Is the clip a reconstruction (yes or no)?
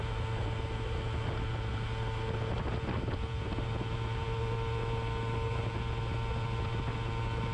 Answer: no